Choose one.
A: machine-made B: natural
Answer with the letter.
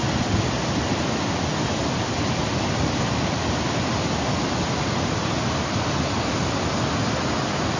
B